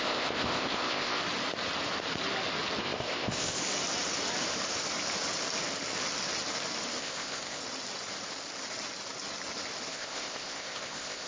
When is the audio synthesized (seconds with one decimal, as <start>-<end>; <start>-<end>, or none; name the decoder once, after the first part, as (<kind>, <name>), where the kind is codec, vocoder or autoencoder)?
0.0-1.2 (codec, ZipCodec); 2.8-3.6; 7.0-7.6; 9.9-11.3